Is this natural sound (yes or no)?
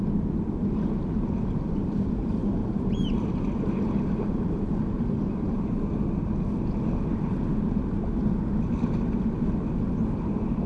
yes